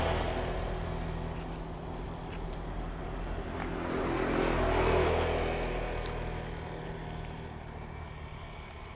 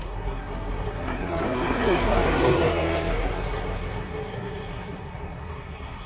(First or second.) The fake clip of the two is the second